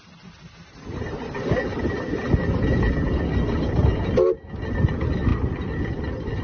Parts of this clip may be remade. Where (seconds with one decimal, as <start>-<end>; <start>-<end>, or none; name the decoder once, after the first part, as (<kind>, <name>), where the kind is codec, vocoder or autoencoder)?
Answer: 5.3-6.4 (vocoder, BigVGAN v2)